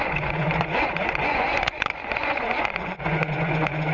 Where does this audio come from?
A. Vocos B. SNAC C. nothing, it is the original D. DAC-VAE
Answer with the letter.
A